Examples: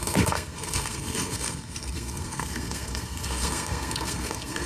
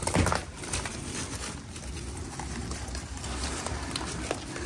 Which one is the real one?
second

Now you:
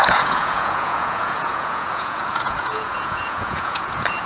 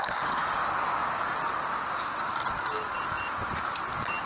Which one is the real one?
second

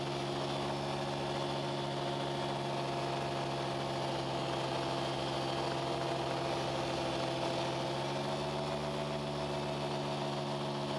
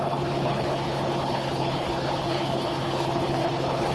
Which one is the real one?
first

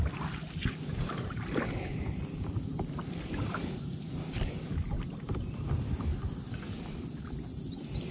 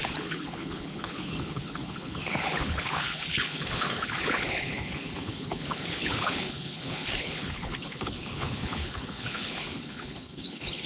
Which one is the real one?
first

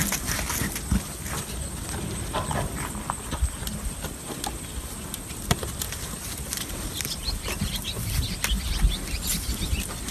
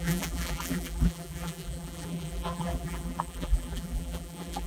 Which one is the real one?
first